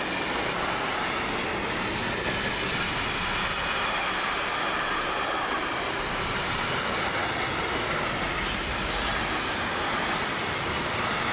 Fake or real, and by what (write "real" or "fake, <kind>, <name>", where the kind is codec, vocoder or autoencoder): real